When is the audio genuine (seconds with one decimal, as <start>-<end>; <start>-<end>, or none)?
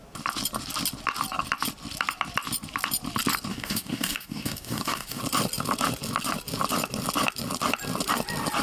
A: 0.0-3.5; 5.2-8.6